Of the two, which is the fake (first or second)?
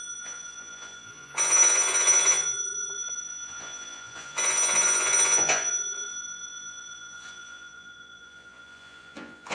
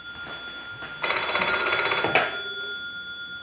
first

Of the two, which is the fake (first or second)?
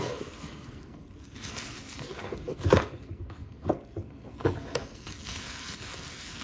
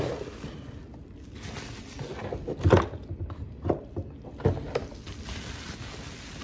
first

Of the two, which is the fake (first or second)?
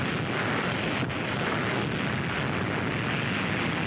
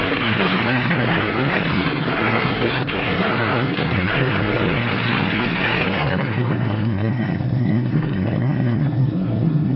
second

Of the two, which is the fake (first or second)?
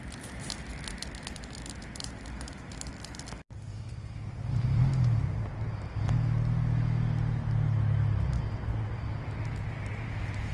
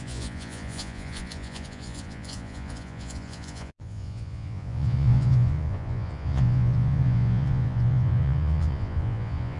second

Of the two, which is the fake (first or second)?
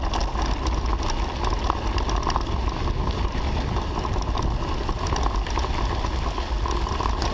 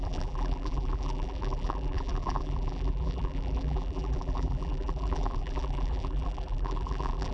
second